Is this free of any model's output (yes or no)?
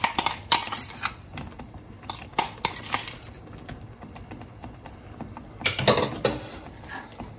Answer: no